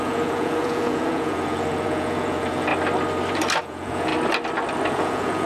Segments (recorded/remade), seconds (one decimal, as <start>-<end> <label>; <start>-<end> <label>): 0.0-2.7 remade; 2.7-3.6 recorded; 3.6-4.1 remade; 4.1-4.9 recorded; 4.9-5.5 remade